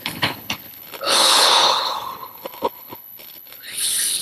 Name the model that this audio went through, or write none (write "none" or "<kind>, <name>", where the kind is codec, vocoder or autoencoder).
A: codec, HILCodec